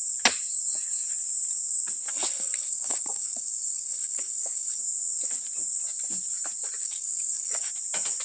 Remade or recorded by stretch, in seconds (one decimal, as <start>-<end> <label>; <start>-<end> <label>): 0.0-2.1 recorded; 2.1-4.8 remade; 4.8-6.8 recorded; 6.8-7.7 remade; 7.7-8.2 recorded